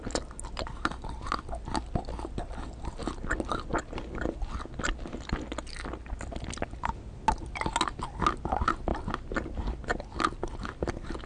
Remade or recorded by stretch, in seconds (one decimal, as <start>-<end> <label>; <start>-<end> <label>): 0.0-11.3 recorded